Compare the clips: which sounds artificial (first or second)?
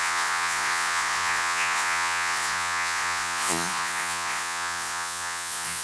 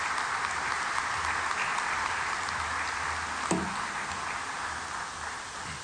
first